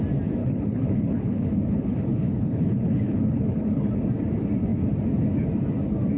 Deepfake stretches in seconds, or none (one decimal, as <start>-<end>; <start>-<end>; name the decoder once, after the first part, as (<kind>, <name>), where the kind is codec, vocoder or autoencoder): 0.4-3.9 (codec, HILCodec)